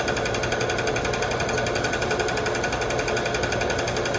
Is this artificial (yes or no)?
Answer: no